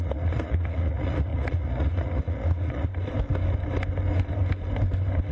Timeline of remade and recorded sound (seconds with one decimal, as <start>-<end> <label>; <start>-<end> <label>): 0.0-2.9 remade; 2.9-5.3 recorded